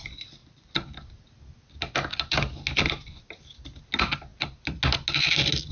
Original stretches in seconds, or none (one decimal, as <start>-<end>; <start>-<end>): 0.0-5.7